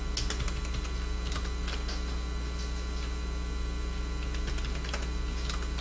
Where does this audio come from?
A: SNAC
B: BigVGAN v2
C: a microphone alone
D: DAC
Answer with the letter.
C